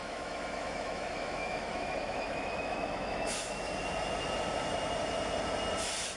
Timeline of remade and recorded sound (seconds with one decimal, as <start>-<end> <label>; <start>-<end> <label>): 0.0-3.7 remade; 3.7-6.2 recorded